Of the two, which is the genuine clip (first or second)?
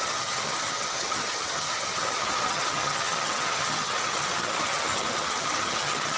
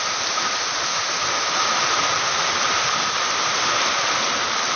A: second